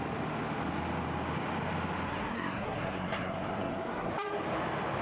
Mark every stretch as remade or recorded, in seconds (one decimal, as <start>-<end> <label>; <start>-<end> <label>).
0.0-2.1 recorded; 2.1-4.1 remade; 4.1-5.0 recorded